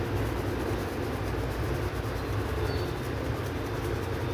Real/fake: real